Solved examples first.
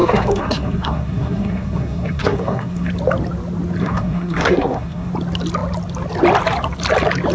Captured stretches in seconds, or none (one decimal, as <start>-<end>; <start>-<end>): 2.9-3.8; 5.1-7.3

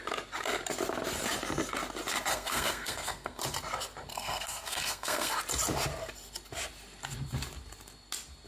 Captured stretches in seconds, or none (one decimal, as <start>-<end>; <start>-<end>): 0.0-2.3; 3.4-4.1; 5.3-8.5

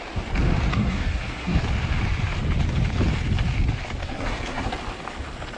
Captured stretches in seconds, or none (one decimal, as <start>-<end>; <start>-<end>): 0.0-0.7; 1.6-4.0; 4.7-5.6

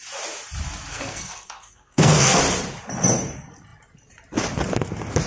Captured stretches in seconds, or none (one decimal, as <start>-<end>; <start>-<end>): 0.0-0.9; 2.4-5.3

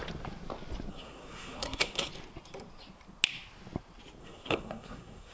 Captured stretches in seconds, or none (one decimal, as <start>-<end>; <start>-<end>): 0.0-0.9; 2.1-4.2

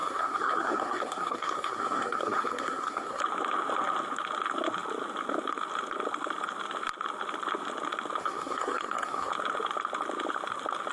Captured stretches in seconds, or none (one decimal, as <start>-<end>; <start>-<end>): 3.2-8.2; 9.3-10.9

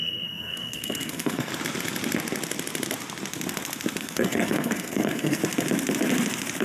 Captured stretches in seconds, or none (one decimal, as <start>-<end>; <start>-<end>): 1.5-4.0; 5.4-6.6